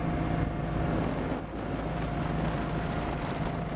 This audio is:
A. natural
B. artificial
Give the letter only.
A